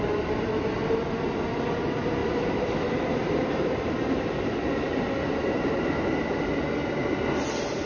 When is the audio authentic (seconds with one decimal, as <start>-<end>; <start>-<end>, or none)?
0.0-2.2; 3.9-7.9